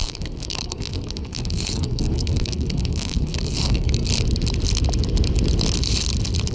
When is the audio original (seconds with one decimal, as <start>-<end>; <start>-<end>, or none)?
4.1-6.5